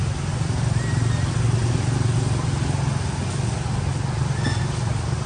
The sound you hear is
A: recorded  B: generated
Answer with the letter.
A